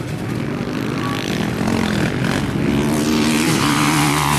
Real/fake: real